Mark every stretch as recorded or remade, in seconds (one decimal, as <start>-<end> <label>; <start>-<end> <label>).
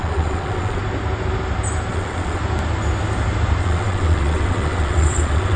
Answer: 0.0-0.8 remade; 0.8-1.9 recorded; 1.9-2.4 remade; 2.4-3.6 recorded; 3.6-5.6 remade